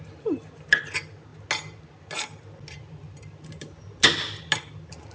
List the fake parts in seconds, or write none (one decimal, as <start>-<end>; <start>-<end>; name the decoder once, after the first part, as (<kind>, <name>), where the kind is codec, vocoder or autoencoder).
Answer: none